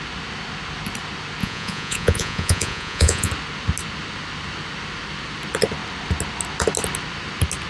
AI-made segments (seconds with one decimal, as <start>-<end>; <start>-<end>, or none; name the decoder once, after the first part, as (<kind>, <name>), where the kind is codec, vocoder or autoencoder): 1.4-3.3 (vocoder, Vocos)